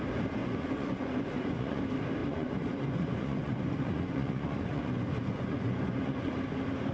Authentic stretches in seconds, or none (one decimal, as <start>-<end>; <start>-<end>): 0.0-0.4; 1.8-2.2; 6.3-6.9